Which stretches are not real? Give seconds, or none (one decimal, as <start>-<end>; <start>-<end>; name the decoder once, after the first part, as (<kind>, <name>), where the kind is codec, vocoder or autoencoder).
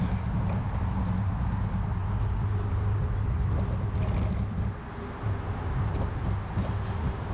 none